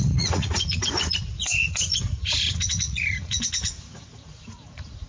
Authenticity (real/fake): fake